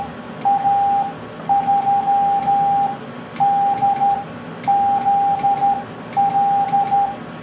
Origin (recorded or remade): recorded